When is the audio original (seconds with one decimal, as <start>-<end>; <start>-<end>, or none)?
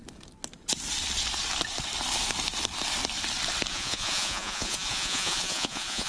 0.0-3.7